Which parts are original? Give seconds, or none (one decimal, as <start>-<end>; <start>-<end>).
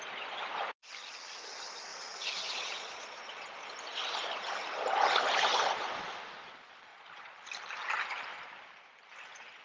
0.0-1.9; 3.7-6.9; 7.4-9.6